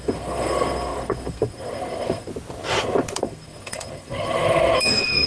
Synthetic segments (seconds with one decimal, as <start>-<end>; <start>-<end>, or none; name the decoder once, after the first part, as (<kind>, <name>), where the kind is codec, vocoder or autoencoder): 0.0-2.3 (codec, SNAC); 3.2-5.3